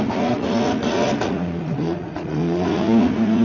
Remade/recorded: remade